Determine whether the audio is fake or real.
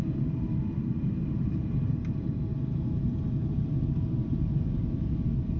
fake